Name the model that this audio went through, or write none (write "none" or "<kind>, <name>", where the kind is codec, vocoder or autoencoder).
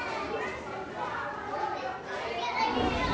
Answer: none